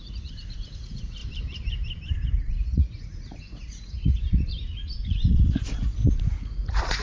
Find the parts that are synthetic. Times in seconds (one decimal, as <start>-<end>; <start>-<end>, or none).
0.0-1.2; 2.4-7.0